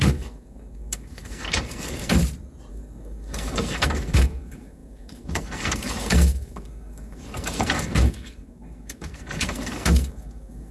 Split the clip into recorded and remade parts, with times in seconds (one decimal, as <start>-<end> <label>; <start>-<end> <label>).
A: 0.0-2.2 remade; 2.2-2.7 recorded; 2.7-10.7 remade